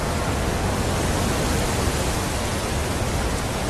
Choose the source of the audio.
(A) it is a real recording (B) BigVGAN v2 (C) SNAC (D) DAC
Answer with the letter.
A